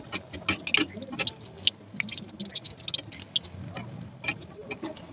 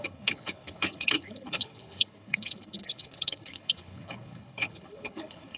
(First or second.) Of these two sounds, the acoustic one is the first